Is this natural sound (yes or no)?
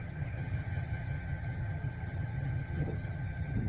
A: no